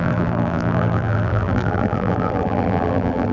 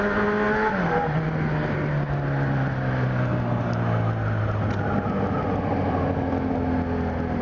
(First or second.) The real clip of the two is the second